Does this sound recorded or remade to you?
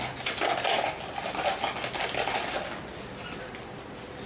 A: recorded